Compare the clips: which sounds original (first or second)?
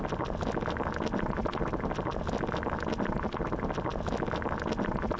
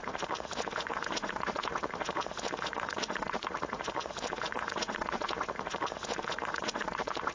first